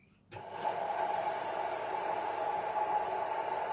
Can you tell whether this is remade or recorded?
recorded